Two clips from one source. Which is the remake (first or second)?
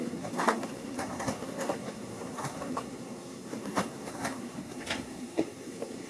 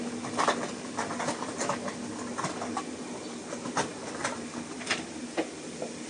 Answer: first